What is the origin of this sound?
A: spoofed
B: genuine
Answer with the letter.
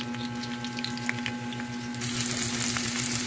B